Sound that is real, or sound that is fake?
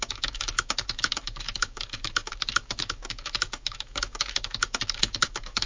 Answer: fake